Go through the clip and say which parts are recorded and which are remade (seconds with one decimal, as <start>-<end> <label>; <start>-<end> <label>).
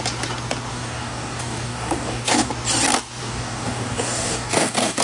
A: 0.0-0.7 recorded; 0.7-2.5 remade; 2.5-3.2 recorded; 3.2-5.0 remade